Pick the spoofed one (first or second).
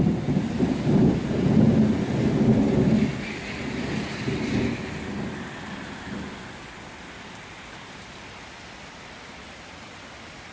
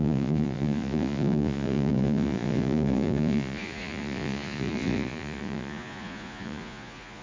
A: second